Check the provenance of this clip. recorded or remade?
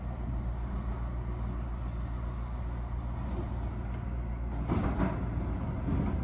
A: recorded